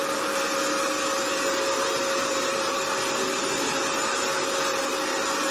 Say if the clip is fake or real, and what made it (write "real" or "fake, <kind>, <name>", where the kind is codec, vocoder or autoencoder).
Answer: real